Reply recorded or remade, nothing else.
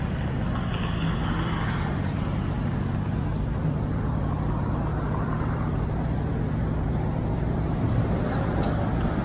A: recorded